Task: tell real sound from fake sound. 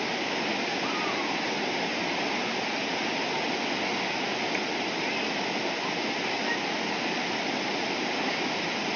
real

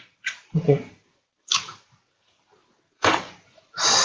fake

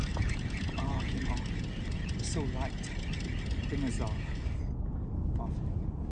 real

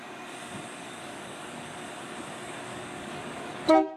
fake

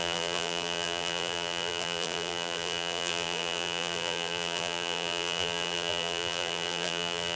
fake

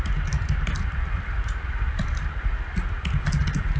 real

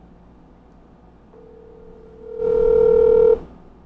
real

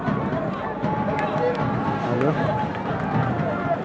real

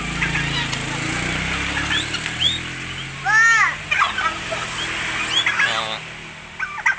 real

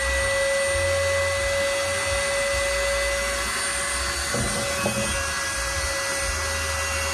real